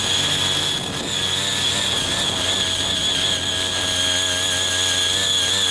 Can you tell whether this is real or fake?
real